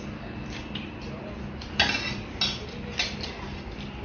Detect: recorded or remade recorded